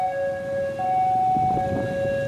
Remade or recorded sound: recorded